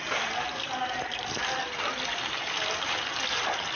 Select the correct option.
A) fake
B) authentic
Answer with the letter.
B